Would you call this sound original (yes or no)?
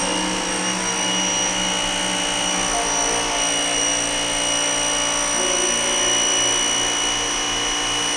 yes